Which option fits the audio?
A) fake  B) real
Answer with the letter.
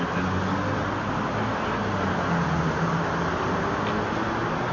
B